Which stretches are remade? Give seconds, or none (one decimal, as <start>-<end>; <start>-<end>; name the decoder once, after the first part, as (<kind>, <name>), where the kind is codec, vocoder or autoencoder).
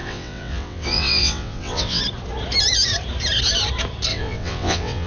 0.0-2.0 (vocoder, WaveNeXt); 4.1-5.1